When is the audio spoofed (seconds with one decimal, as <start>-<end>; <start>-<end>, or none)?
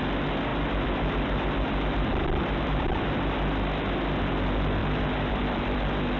0.5-2.8; 4.8-5.8